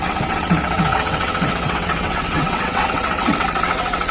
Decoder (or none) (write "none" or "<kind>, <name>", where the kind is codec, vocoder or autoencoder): vocoder, WaveNeXt